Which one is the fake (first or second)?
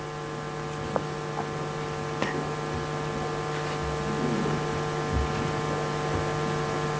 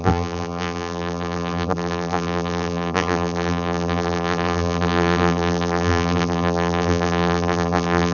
second